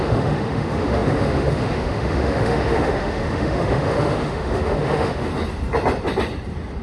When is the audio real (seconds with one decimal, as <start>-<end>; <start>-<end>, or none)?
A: 5.3-6.8